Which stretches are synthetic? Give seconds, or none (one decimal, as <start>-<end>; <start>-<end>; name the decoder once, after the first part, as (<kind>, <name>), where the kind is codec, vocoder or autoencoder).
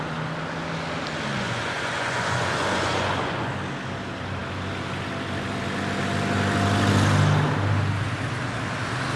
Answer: 1.3-3.5 (vocoder, Vocos)